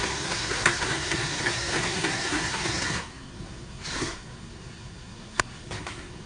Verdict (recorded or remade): remade